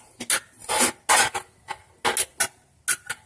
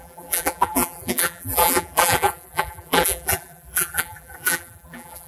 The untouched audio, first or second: first